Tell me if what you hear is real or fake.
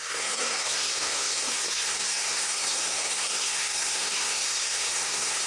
fake